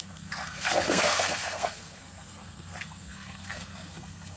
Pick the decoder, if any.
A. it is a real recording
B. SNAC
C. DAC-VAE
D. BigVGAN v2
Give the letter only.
B